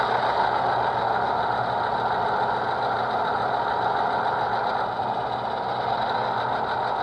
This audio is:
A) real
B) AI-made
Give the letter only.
A